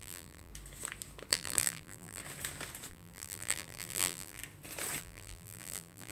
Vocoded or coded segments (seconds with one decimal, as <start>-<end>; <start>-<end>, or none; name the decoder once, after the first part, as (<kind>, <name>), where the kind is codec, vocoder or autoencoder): 0.0-0.5 (vocoder, BigVGAN v2); 1.3-2.2; 2.9-4.4; 5.0-6.1